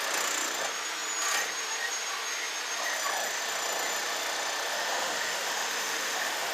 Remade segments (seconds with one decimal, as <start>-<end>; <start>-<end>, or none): 4.7-6.5